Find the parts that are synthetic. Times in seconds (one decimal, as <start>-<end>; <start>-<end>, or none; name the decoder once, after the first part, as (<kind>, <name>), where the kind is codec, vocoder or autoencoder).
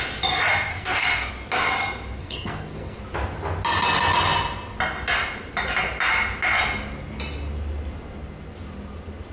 0.7-1.3 (codec, SNAC); 2.2-3.0